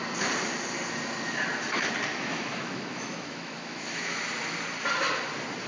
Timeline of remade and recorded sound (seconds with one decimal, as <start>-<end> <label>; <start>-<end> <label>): 0.0-2.1 recorded; 2.1-4.2 remade; 4.2-5.7 recorded